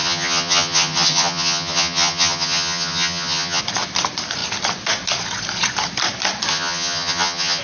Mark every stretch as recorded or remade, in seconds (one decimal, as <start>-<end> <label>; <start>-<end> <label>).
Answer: 0.0-3.6 remade; 3.6-6.5 recorded; 6.5-7.6 remade